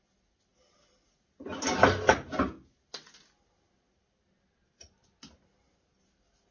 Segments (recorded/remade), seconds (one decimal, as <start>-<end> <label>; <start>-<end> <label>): 0.0-6.5 recorded

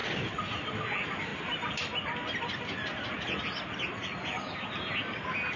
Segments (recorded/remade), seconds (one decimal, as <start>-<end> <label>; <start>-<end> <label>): 0.0-0.7 remade; 0.7-5.6 recorded

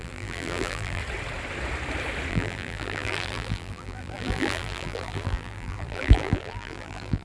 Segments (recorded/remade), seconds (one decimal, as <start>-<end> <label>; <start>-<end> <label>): 0.0-1.0 remade; 1.0-2.3 recorded; 2.3-7.2 remade

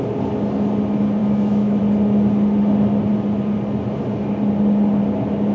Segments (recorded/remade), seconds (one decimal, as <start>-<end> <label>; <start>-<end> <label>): 0.0-1.2 recorded; 1.2-1.8 remade; 1.8-5.5 recorded

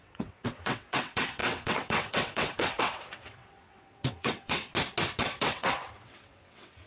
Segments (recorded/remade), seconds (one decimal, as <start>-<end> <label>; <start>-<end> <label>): 0.0-4.7 remade; 4.7-5.2 recorded; 5.2-6.9 remade